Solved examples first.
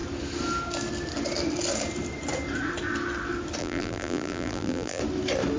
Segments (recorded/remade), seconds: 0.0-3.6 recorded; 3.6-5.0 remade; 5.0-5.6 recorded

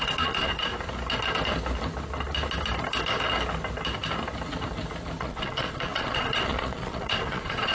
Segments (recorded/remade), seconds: 0.0-0.7 remade; 0.7-5.2 recorded; 5.2-7.7 remade

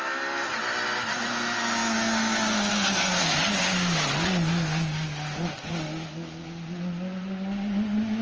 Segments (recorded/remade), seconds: 0.0-8.2 recorded